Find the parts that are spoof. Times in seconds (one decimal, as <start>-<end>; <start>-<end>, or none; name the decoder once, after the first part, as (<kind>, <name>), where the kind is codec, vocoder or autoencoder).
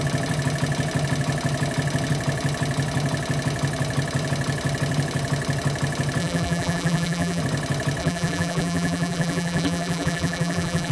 6.2-7.4 (vocoder, BigVGAN v2); 8.0-10.9